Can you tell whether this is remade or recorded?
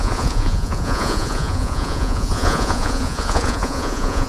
remade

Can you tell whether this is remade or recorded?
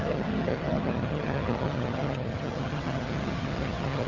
remade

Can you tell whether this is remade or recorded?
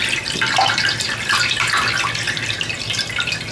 recorded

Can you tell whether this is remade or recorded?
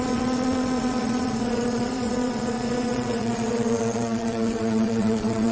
remade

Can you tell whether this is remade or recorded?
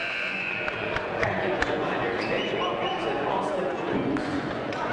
remade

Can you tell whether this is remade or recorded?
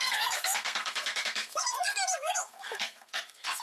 remade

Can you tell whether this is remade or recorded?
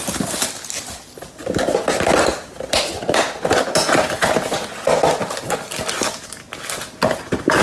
recorded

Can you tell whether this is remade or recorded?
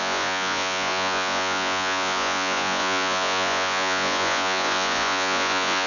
remade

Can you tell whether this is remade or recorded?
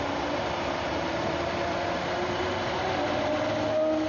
recorded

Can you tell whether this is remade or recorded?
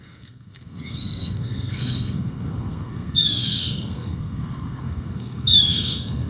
remade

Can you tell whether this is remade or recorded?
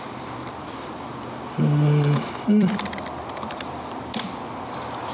remade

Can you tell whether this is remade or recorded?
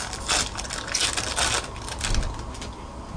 recorded